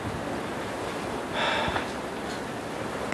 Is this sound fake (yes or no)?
no